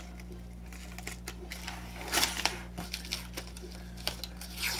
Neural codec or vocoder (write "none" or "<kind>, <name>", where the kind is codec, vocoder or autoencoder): none